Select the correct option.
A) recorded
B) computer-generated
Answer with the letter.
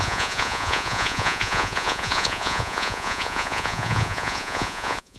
B